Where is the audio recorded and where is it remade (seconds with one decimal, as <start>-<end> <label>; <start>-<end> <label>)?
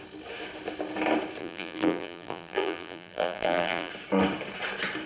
0.0-1.4 recorded; 1.4-3.9 remade; 3.9-5.1 recorded